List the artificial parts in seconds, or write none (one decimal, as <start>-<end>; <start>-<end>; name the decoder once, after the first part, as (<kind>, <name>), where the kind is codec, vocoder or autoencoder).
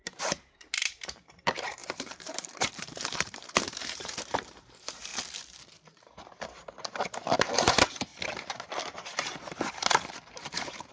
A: 0.0-5.1 (vocoder, BigVGAN v2); 5.9-8.1; 8.8-10.9